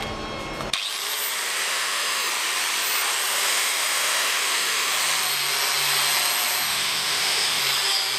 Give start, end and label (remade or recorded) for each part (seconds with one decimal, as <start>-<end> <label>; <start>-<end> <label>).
0.0-1.7 recorded; 1.7-2.3 remade; 2.3-3.5 recorded; 3.5-4.9 remade; 4.9-6.6 recorded; 6.6-7.6 remade; 7.6-8.2 recorded